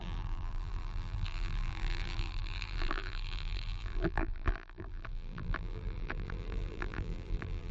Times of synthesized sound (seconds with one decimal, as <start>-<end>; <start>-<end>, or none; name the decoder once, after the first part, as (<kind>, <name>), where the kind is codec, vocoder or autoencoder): 0.0-7.7 (vocoder, BigVGAN v2)